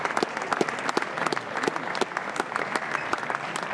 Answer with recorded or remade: recorded